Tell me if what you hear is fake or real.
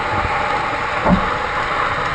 real